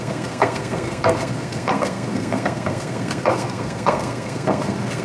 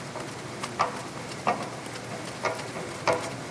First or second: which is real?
second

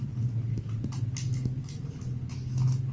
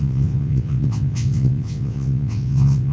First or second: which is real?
first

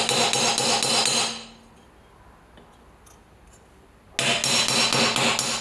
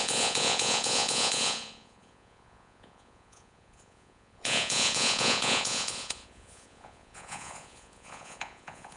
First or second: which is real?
first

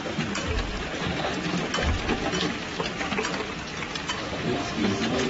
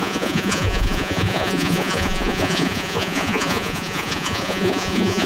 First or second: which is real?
first